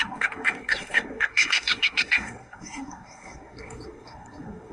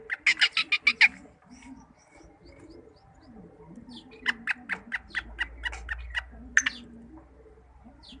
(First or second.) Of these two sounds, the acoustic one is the second